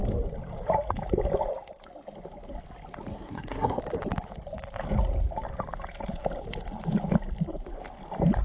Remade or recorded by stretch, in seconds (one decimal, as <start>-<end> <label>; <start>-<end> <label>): 0.0-3.1 recorded; 3.1-3.8 remade; 3.8-8.4 recorded